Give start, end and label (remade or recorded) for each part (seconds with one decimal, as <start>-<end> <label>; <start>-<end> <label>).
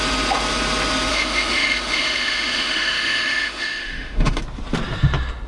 0.0-1.1 recorded; 1.1-4.4 remade; 4.4-5.5 recorded